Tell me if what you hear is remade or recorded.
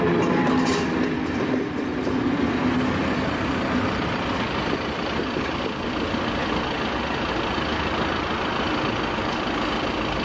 recorded